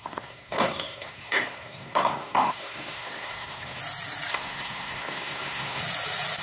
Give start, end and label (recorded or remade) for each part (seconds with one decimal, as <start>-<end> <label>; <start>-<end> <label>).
0.0-3.8 remade; 3.8-4.3 recorded; 4.3-5.8 remade; 5.8-6.4 recorded